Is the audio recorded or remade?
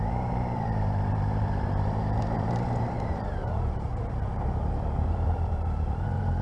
remade